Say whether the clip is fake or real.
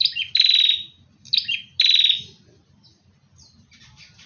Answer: real